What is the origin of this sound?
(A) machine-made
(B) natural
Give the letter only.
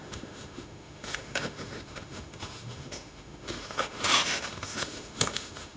A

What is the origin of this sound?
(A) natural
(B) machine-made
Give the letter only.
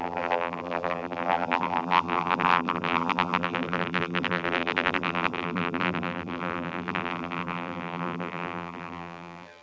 B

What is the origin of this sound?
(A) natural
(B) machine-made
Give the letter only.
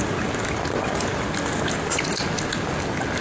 A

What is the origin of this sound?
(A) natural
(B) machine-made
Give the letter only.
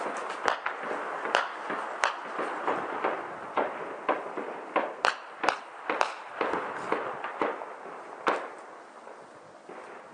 A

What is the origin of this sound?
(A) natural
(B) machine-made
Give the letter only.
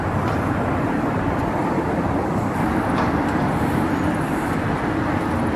A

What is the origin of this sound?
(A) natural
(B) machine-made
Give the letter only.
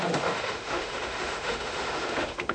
B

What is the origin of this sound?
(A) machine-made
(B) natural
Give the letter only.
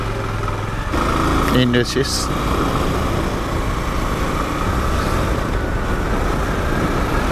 B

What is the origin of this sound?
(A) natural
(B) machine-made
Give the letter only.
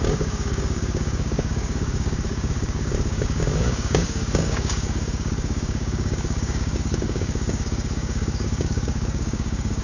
B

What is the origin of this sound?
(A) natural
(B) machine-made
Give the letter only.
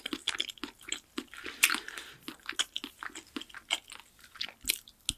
A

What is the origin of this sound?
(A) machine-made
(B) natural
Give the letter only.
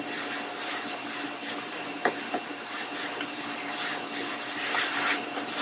B